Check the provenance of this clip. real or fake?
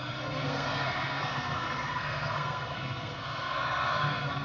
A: fake